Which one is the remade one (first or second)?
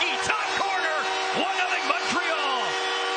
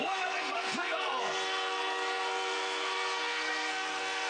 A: second